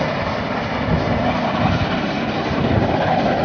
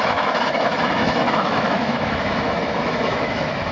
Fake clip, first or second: second